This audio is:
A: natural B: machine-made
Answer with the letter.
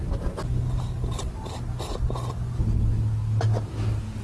A